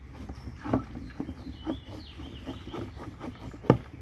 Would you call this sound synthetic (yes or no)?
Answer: yes